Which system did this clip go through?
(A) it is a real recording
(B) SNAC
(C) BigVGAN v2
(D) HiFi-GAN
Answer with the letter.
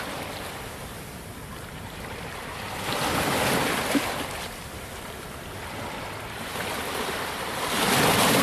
C